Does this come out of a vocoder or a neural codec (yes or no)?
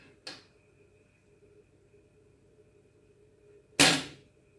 no